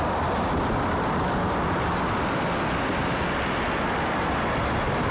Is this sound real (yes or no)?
no